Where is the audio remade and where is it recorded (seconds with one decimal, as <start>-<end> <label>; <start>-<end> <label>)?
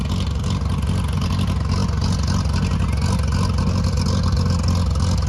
0.0-5.3 recorded